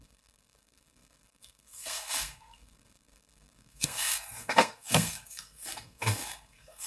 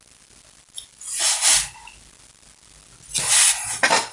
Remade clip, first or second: first